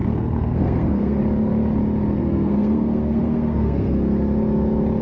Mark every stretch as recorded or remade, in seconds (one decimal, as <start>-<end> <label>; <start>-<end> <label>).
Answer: 0.0-1.2 remade; 1.2-2.2 recorded; 2.2-3.9 remade; 3.9-5.0 recorded